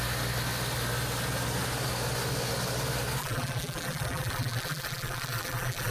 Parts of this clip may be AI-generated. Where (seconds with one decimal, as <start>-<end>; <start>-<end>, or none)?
3.2-5.9